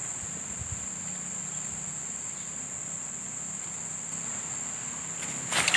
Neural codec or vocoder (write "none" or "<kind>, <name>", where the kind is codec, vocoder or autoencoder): none